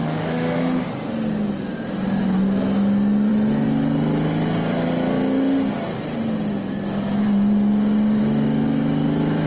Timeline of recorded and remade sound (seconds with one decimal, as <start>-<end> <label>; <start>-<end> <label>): 0.0-0.9 remade; 0.9-9.5 recorded